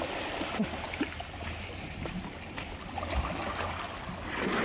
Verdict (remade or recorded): recorded